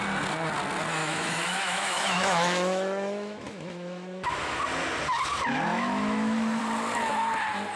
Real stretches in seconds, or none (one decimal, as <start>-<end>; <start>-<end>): 0.0-1.0; 4.6-5.7; 6.6-7.8